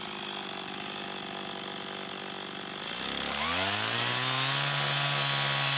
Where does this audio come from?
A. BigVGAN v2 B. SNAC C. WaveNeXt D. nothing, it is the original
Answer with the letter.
D